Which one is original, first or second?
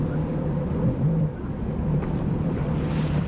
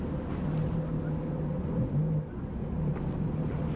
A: second